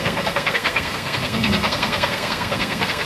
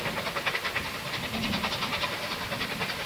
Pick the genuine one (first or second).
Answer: second